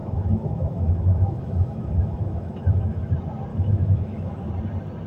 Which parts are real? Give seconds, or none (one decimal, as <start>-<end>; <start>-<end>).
3.1-3.5; 4.5-5.1